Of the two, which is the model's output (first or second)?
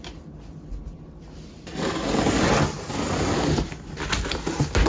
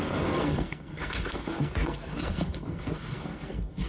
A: second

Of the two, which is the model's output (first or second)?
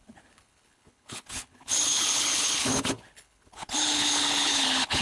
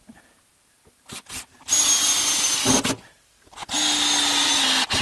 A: first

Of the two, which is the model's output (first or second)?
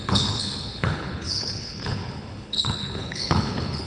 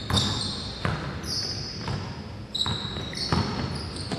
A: first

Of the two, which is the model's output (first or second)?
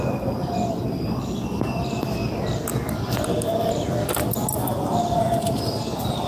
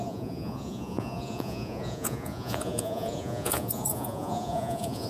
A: second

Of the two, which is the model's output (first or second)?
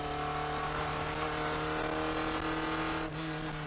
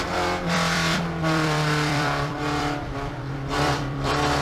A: second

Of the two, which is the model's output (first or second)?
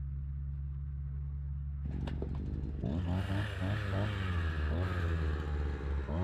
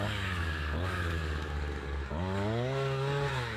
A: second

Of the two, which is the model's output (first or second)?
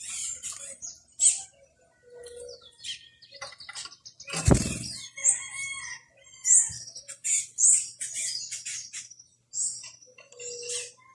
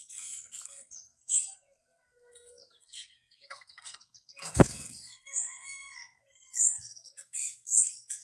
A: second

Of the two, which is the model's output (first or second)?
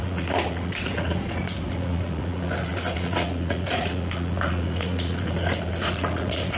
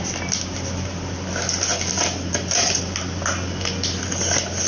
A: first